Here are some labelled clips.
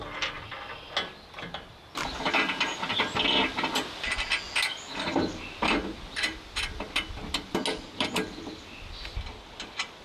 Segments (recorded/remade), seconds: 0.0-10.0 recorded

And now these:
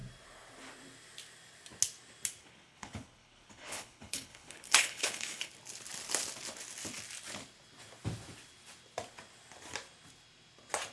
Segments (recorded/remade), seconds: 0.0-2.4 recorded; 2.4-5.5 remade; 5.5-10.9 recorded

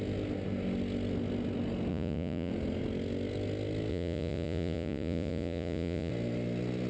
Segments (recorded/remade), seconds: 0.0-1.9 recorded; 1.9-2.5 remade; 2.5-3.9 recorded; 3.9-6.1 remade; 6.1-6.9 recorded

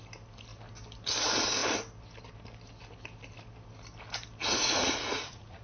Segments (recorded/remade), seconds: 0.0-4.4 recorded; 4.4-5.6 remade

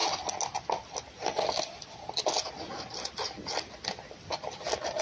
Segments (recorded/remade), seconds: 0.0-5.0 recorded

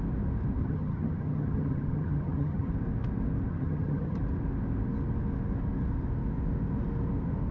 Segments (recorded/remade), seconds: 0.0-0.6 recorded; 0.6-2.7 remade; 2.7-3.5 recorded; 3.5-4.2 remade; 4.2-7.5 recorded

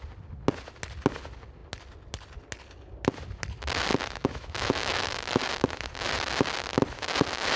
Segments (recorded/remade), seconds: 0.0-3.9 recorded; 3.9-5.3 remade; 5.3-7.6 recorded